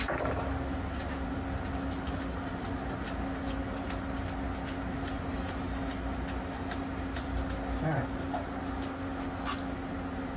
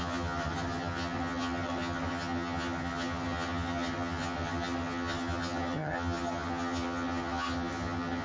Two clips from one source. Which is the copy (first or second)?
second